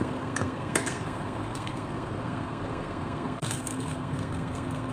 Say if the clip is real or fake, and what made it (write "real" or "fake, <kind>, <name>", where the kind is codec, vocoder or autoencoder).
fake, codec, SNAC